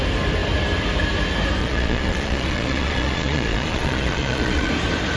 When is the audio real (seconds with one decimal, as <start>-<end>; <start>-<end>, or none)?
0.0-1.6; 4.7-5.2